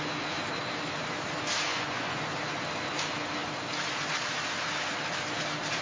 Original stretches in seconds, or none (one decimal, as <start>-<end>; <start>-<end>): 0.0-1.7; 2.2-5.8